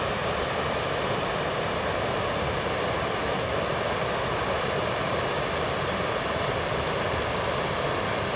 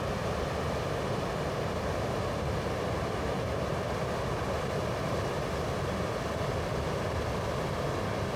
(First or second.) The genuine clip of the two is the second